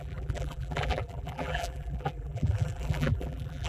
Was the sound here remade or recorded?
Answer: remade